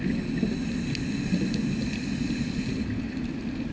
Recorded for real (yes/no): yes